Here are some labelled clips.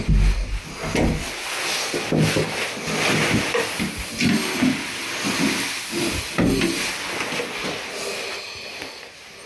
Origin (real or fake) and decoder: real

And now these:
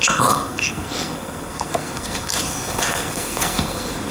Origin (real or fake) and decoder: fake, codec, SNAC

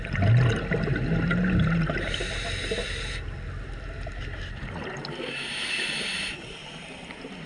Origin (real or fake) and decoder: real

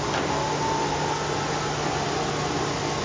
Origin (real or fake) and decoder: real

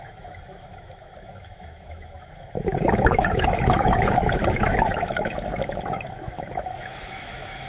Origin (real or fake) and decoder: fake, autoencoder, DAC-VAE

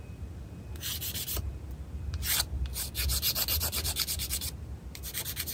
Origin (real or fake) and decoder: real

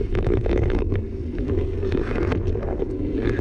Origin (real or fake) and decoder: fake, codec, SNAC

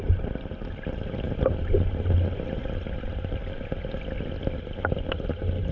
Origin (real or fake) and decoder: real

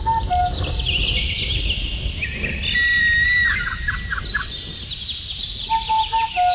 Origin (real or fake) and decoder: real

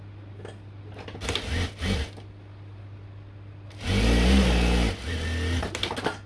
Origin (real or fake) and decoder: real